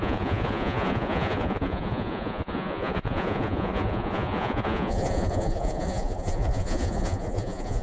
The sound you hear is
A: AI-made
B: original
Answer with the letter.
A